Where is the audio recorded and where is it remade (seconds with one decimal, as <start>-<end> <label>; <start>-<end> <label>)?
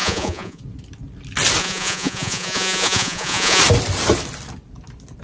0.0-0.6 remade; 0.6-1.6 recorded; 1.6-3.6 remade; 3.6-5.2 recorded